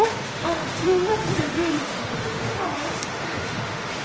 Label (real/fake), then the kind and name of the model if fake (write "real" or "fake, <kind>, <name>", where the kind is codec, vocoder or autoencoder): fake, autoencoder, DAC-VAE